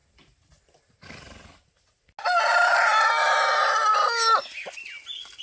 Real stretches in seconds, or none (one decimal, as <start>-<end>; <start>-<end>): 0.0-5.4